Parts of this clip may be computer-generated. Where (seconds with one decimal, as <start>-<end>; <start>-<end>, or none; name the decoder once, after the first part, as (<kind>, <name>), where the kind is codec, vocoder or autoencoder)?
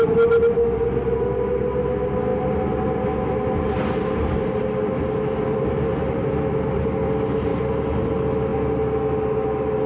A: none